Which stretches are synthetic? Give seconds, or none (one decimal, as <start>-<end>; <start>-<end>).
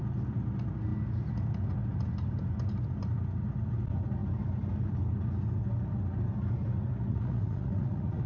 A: 7.1-8.3